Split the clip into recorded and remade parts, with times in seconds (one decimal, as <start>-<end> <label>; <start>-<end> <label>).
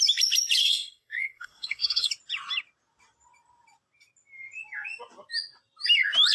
0.0-0.6 recorded; 0.6-2.1 remade; 2.1-6.3 recorded